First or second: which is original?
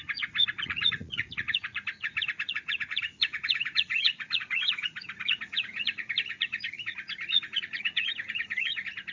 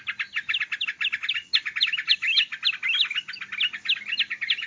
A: second